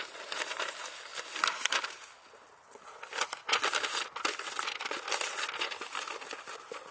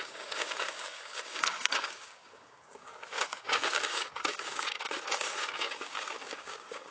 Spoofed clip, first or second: second